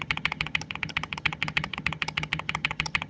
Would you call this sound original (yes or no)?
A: no